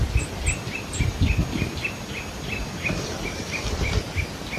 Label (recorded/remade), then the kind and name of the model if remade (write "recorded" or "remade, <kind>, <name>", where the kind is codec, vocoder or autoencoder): recorded